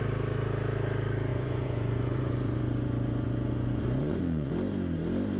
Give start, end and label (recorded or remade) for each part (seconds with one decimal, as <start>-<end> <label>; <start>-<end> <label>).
0.0-1.3 recorded; 1.3-4.5 remade; 4.5-5.4 recorded